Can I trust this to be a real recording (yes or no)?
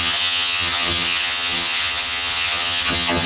no